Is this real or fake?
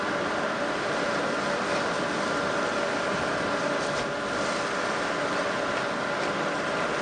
real